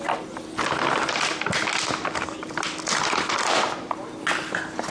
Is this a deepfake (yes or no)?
no